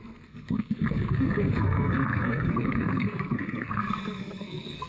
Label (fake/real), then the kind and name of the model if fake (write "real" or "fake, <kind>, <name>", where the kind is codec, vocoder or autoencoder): fake, codec, SNAC